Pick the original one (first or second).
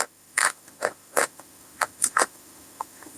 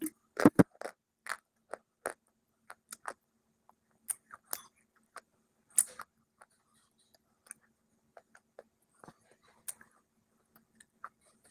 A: second